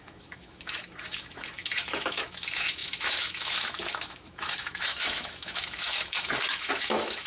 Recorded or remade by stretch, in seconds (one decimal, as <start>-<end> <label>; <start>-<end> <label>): 0.0-7.3 remade